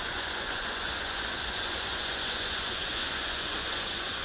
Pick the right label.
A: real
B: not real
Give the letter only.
B